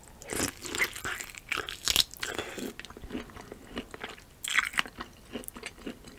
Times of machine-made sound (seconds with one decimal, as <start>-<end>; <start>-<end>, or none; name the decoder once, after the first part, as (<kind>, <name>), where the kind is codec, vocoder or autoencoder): none